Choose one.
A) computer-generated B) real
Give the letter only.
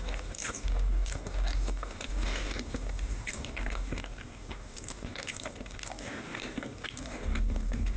A